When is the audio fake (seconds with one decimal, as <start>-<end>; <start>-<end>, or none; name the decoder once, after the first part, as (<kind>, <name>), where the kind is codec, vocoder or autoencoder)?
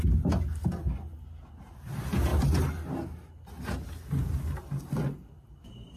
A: none